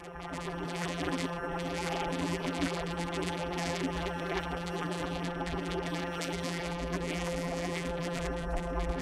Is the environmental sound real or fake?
fake